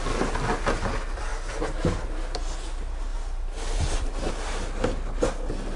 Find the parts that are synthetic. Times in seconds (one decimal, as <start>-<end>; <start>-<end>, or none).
none